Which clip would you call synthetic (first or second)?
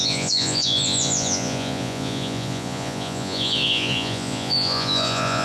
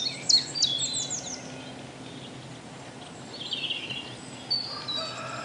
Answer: first